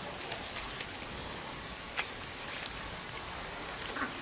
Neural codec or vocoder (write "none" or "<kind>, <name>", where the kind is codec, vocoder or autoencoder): none